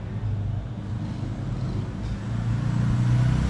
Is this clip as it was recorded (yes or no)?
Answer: yes